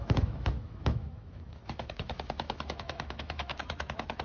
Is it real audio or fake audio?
fake